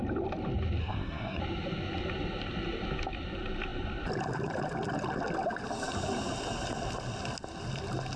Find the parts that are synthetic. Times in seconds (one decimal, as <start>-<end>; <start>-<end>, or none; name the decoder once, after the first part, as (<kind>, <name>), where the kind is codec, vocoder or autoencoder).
0.8-1.4 (codec, SNAC)